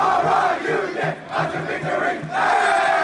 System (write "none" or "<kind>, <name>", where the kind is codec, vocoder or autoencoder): none